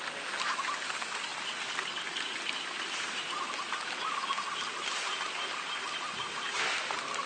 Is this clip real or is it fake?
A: real